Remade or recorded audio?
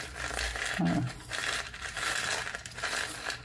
recorded